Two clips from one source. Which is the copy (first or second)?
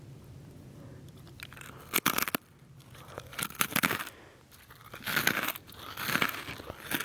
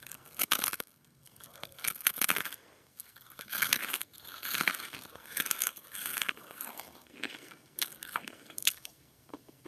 second